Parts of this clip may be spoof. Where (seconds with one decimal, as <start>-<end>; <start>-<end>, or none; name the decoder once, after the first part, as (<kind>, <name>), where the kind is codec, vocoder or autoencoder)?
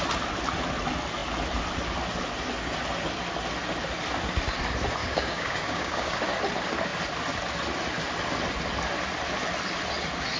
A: 5.0-6.2 (codec, DAC)